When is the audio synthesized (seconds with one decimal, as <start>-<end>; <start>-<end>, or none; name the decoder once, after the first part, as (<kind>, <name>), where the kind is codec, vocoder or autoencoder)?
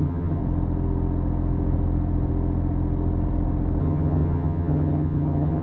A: 0.0-0.4 (vocoder, HiFi-GAN); 3.8-5.6